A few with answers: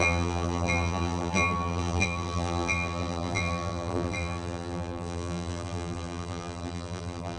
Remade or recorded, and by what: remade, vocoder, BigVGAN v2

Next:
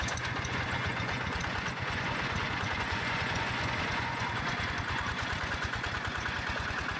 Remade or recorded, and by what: remade, vocoder, Vocos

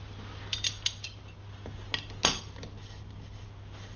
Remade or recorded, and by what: recorded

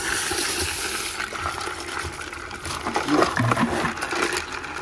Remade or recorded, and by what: recorded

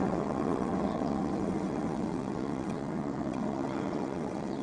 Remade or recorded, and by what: remade, vocoder, WaveNeXt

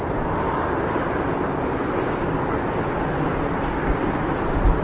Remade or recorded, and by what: recorded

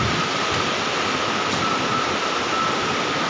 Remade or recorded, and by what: recorded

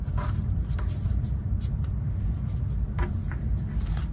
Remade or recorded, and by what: remade, vocoder, BigVGAN v2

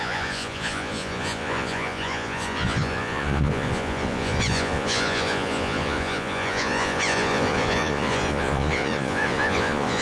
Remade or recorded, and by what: remade, vocoder, Vocos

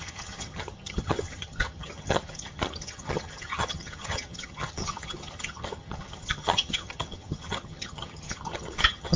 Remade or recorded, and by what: remade, vocoder, HiFi-GAN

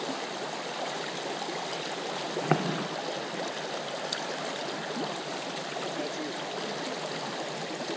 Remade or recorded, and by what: recorded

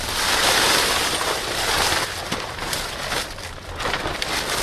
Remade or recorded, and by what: remade, vocoder, BigVGAN v2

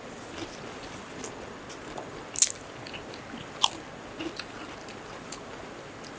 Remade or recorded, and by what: recorded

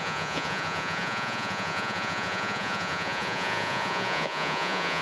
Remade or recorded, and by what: remade, vocoder, Vocos